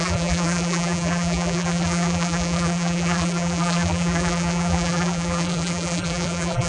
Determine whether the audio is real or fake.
fake